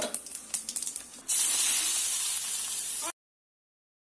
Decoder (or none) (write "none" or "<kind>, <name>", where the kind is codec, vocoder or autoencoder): none